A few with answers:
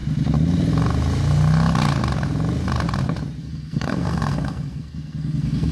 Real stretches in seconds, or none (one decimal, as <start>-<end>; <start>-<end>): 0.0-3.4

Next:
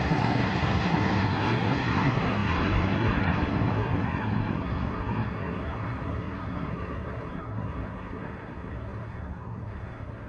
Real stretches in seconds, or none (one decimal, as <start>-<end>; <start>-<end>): none

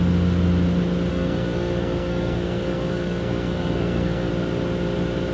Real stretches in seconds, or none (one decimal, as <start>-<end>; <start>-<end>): 0.0-1.1; 4.3-5.3

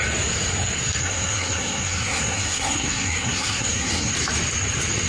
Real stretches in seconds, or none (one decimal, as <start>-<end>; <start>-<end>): 0.0-1.0; 4.1-5.1